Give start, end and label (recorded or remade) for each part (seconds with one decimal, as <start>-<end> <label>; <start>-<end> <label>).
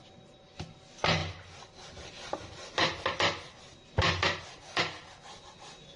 0.0-6.0 recorded